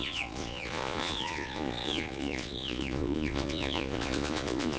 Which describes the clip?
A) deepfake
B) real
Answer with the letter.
A